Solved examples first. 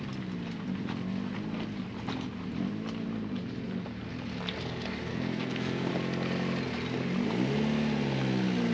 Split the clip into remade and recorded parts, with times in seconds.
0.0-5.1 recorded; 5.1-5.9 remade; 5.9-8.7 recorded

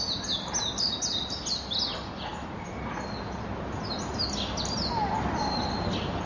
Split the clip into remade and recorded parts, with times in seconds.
0.0-6.3 recorded

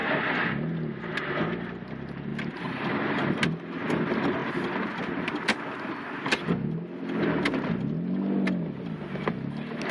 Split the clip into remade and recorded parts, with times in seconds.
0.0-2.3 recorded; 2.3-2.9 remade; 2.9-9.9 recorded

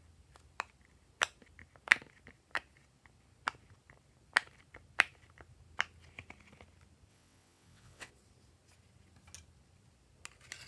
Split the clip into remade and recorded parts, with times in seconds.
0.0-7.1 recorded; 7.1-8.1 remade; 8.1-10.7 recorded

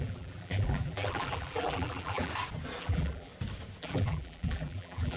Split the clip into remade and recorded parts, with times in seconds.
0.0-2.3 remade; 2.3-2.8 recorded; 2.8-3.3 remade; 3.3-3.8 recorded; 3.8-5.2 remade

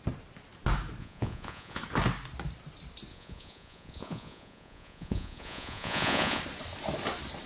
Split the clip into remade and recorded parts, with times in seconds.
0.0-1.0 recorded; 1.0-1.8 remade; 1.8-3.1 recorded; 3.1-6.4 remade; 6.4-7.5 recorded

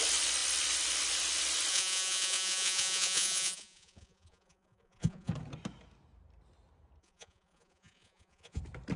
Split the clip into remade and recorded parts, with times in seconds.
0.0-1.7 recorded; 1.7-5.3 remade; 5.3-7.0 recorded; 7.0-8.6 remade; 8.6-9.0 recorded